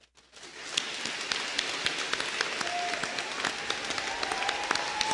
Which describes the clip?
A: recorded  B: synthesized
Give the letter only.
A